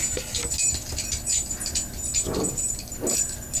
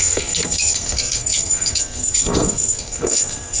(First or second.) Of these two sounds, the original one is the first